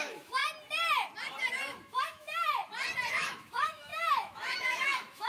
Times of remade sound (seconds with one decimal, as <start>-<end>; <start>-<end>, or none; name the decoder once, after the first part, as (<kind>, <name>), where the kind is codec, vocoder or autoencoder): 0.0-0.4 (autoencoder, DAC-VAE); 1.5-2.6; 3.1-5.3